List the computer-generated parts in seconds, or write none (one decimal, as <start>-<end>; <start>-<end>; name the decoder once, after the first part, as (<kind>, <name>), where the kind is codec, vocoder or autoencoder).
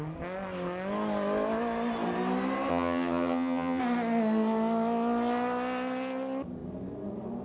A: 2.7-3.8 (vocoder, HiFi-GAN)